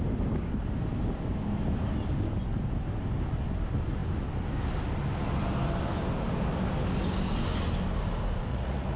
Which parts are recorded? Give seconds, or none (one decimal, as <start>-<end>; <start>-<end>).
0.0-8.5